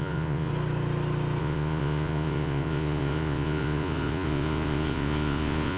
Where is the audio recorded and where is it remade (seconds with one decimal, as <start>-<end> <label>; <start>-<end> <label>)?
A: 0.0-0.5 remade; 0.5-1.4 recorded; 1.4-5.8 remade